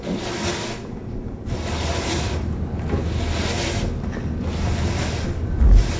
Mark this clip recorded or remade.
recorded